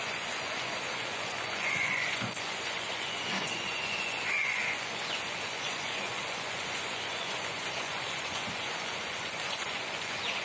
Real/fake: fake